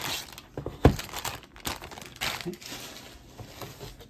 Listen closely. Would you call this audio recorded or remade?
recorded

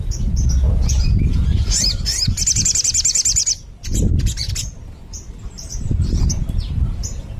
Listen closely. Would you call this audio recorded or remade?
recorded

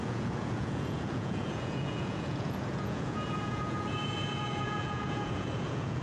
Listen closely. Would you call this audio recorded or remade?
remade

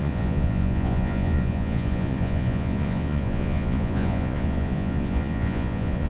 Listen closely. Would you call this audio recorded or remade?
remade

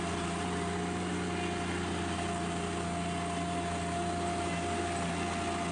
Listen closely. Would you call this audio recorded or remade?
recorded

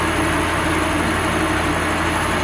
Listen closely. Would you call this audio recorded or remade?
recorded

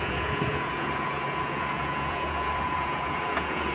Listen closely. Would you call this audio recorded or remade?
remade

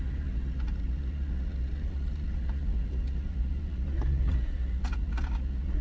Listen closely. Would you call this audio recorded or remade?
remade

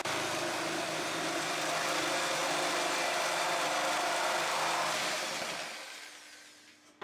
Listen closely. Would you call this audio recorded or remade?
recorded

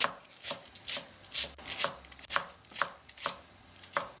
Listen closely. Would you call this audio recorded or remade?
recorded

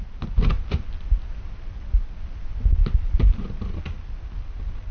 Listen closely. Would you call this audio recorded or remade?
recorded